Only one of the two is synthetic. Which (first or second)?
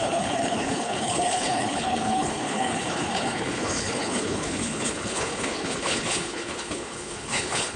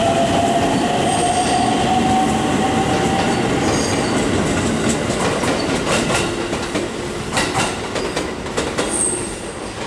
first